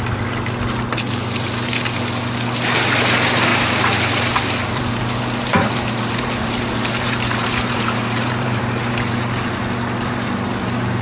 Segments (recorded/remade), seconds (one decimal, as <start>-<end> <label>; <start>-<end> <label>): 0.0-3.5 recorded; 3.5-5.0 remade; 5.0-5.5 recorded; 5.5-8.6 remade; 8.6-11.0 recorded